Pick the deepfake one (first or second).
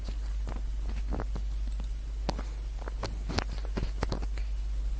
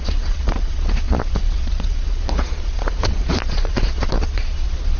second